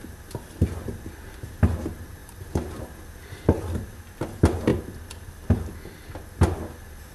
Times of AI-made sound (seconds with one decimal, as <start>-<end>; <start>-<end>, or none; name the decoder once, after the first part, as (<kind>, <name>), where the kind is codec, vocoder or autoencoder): 2.2-2.8 (vocoder, BigVGAN v2)